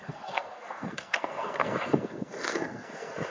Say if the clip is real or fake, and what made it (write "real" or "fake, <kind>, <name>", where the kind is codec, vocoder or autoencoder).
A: fake, codec, SNAC